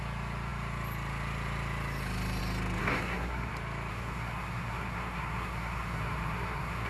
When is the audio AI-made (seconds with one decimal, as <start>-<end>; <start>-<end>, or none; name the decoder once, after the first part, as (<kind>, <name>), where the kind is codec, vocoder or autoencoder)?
2.8-3.5 (codec, SNAC); 3.9-6.9